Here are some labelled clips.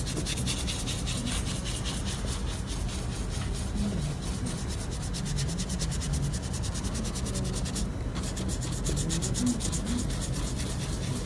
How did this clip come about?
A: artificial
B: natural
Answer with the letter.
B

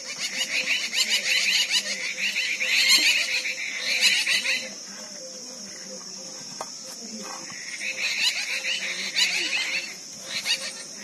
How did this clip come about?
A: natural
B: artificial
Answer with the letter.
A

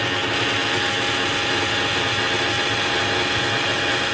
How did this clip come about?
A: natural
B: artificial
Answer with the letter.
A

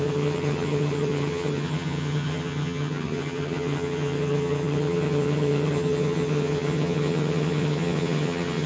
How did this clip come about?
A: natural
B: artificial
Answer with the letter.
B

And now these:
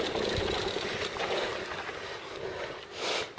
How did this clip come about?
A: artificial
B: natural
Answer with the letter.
B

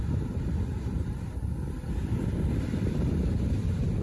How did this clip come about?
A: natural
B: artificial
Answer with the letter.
B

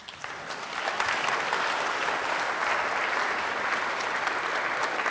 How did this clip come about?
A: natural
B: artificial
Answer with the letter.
A